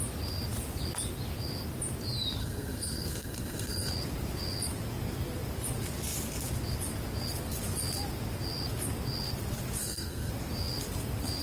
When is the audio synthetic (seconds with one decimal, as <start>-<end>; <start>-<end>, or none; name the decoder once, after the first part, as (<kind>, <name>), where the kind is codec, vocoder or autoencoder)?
2.4-3.9 (codec, SNAC); 9.8-10.3